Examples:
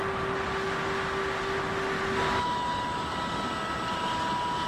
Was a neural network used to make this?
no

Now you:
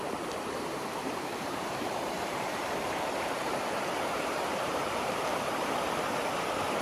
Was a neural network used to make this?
yes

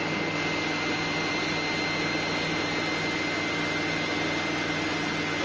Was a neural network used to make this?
no